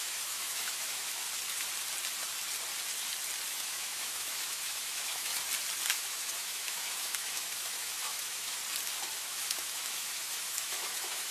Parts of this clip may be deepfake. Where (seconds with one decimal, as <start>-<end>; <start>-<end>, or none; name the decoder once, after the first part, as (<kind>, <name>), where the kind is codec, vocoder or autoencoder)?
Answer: 0.0-1.2 (autoencoder, DAC-VAE); 3.5-5.3; 5.9-8.6; 9.2-11.3